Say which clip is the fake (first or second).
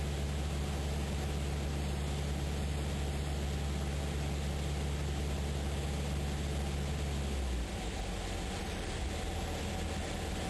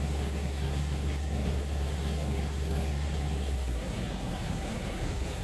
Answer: second